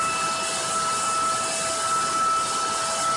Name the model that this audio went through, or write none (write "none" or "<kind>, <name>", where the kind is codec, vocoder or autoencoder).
none